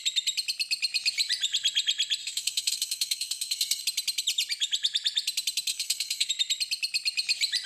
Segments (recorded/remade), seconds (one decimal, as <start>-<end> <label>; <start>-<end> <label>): 0.0-2.2 recorded; 2.2-3.8 remade; 3.8-5.7 recorded; 5.7-6.3 remade; 6.3-7.7 recorded